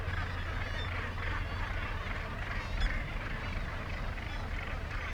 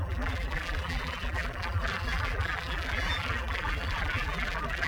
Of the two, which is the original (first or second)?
first